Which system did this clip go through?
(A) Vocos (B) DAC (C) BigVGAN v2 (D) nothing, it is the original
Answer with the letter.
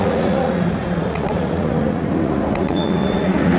A